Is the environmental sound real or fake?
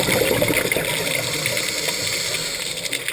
real